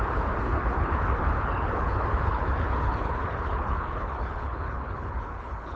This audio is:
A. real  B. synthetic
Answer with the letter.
B